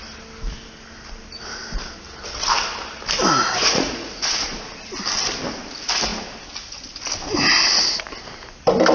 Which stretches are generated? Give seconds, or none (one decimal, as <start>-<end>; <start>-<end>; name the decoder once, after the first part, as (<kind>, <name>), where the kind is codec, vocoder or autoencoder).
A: 3.4-4.7 (vocoder, Vocos)